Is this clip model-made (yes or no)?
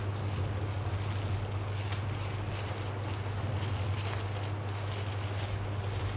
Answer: no